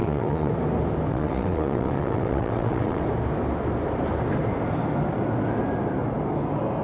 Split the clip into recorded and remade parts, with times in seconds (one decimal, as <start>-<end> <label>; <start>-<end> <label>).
0.0-0.5 remade; 0.5-1.1 recorded; 1.1-3.0 remade; 3.0-6.8 recorded